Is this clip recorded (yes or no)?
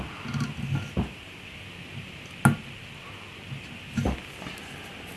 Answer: yes